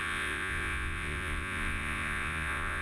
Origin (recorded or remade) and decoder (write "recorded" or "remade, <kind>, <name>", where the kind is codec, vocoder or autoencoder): remade, vocoder, Vocos